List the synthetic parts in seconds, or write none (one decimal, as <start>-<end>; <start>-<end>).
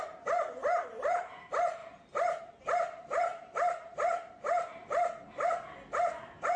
none